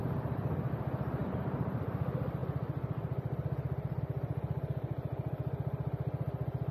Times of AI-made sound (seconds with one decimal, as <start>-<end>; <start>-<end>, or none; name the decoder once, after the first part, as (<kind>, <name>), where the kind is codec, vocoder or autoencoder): 1.2-1.9 (vocoder, BigVGAN v2); 2.4-4.0